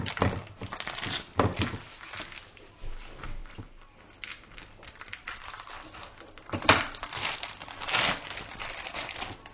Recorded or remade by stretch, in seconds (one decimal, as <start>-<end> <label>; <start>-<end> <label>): 0.0-3.4 recorded; 3.4-4.0 remade; 4.0-9.5 recorded